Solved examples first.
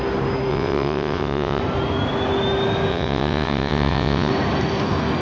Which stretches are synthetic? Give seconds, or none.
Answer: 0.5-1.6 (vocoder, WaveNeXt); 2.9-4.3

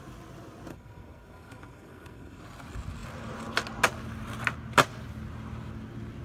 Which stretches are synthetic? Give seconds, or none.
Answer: 0.7-2.4 (codec, SNAC)

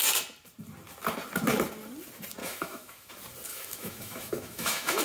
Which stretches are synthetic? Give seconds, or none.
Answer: 2.4-3.1 (autoencoder, DAC-VAE); 3.5-5.0

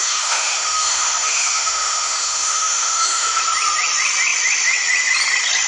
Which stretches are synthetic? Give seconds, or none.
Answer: 0.0-3.4 (autoencoder, DAC-VAE)

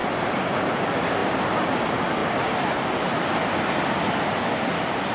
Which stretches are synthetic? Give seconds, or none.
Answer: 1.2-1.8 (vocoder, BigVGAN v2); 2.2-2.9

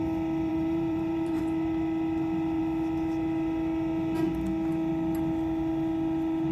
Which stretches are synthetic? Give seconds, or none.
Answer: 0.5-1.4 (vocoder, BigVGAN v2)

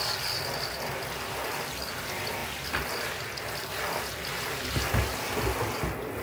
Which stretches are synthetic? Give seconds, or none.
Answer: none

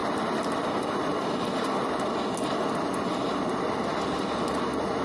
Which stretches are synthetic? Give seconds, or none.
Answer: 0.0-2.2 (vocoder, BigVGAN v2)